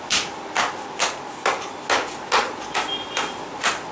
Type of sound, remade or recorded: recorded